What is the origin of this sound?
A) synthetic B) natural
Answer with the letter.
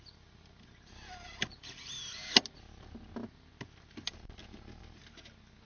B